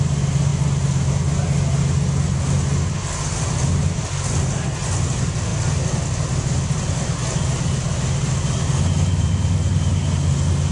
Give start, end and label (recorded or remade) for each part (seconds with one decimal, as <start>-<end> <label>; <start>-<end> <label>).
0.0-10.7 recorded